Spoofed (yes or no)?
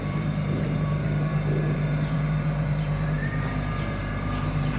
yes